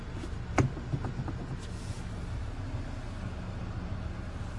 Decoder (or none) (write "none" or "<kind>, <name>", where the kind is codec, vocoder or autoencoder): none